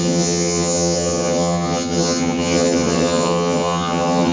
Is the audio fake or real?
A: fake